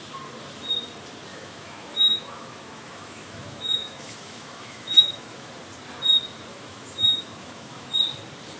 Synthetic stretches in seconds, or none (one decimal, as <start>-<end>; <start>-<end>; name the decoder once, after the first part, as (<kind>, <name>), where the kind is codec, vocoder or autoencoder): 1.3-5.5 (autoencoder, DAC-VAE); 6.5-7.9